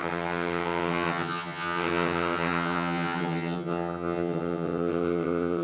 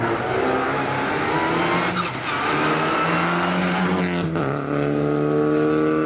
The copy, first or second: first